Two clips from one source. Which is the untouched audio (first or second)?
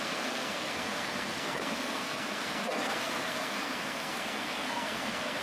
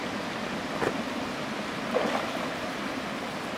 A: second